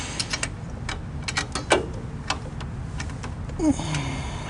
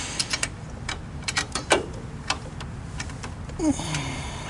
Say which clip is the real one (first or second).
first